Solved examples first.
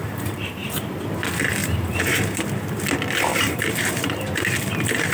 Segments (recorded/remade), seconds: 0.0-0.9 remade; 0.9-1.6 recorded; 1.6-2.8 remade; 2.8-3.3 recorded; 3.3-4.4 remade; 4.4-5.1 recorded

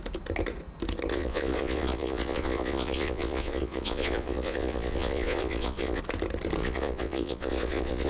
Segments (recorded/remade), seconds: 0.0-1.1 recorded; 1.1-6.0 remade; 6.0-6.6 recorded; 6.6-8.1 remade

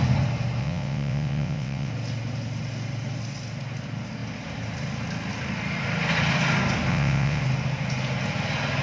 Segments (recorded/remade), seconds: 0.0-0.6 recorded; 0.6-1.9 remade; 1.9-6.9 recorded; 6.9-7.4 remade; 7.4-8.8 recorded

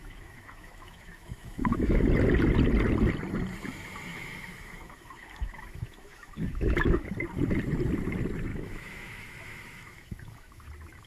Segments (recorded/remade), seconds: 0.0-2.0 remade; 2.0-4.1 recorded; 4.1-7.1 remade; 7.1-8.5 recorded; 8.5-10.7 remade; 10.7-11.1 recorded

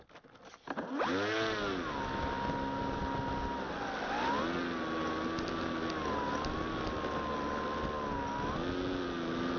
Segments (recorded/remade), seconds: 0.0-9.6 recorded

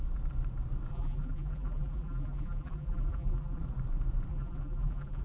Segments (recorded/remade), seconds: 0.0-0.9 recorded; 0.9-3.6 remade; 3.6-4.3 recorded; 4.3-5.2 remade

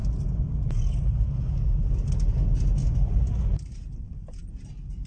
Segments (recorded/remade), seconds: 0.0-5.1 recorded

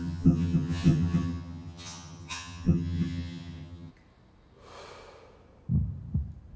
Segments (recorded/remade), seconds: 0.0-3.9 remade; 3.9-6.6 recorded